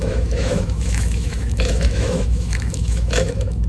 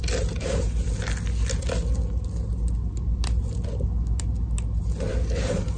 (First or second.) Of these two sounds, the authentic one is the second